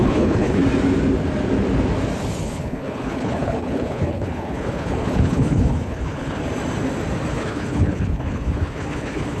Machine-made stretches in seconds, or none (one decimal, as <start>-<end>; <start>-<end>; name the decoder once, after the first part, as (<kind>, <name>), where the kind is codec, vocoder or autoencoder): 0.0-0.6 (codec, HILCodec); 2.4-6.4; 7.3-9.4